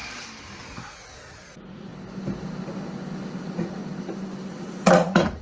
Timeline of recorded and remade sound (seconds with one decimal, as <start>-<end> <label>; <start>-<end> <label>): 0.0-0.6 recorded; 0.6-1.9 remade; 1.9-3.4 recorded; 3.4-3.8 remade; 3.8-4.5 recorded; 4.5-5.4 remade